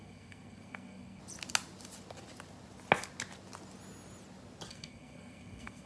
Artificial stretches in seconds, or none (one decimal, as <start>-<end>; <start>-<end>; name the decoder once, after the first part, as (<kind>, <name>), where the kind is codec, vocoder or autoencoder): 0.0-1.2 (codec, SNAC); 4.7-5.9